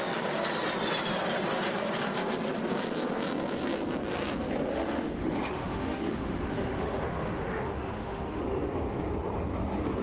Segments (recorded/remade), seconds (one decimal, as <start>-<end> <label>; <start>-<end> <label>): 0.0-4.7 recorded; 4.7-8.4 remade; 8.4-10.0 recorded